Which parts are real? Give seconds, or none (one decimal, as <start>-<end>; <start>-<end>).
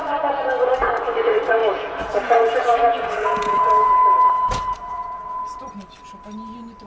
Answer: 0.7-1.6; 5.7-6.9